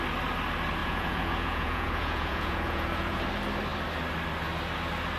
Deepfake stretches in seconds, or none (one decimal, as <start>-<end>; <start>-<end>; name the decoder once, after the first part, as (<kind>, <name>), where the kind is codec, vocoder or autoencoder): 0.8-3.2 (vocoder, Vocos)